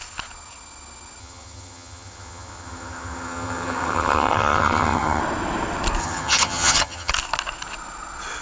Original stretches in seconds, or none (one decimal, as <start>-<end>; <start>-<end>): 0.0-1.2; 5.2-6.0; 7.1-8.4